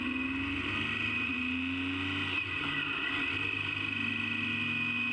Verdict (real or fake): real